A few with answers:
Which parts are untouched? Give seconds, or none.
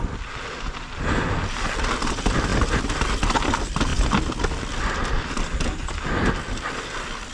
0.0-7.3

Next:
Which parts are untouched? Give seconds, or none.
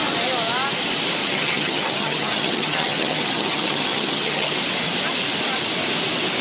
0.0-1.2; 4.5-6.4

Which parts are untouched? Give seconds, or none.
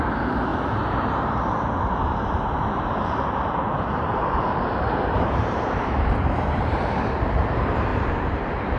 none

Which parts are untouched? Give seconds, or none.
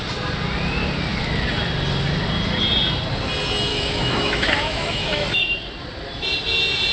0.0-3.7; 5.4-6.9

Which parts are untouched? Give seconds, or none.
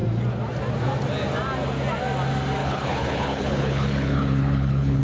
0.0-2.6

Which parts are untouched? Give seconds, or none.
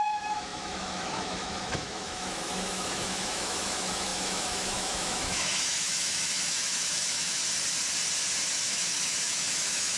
7.4-8.5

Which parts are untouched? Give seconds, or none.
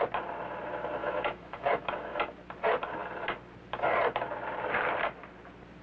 0.0-1.0; 2.2-5.8